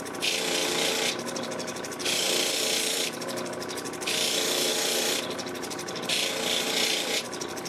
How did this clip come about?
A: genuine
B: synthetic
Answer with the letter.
B